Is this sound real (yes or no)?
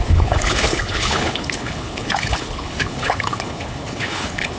no